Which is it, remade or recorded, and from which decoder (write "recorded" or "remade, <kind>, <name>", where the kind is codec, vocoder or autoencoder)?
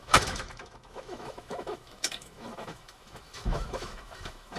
remade, autoencoder, DAC-VAE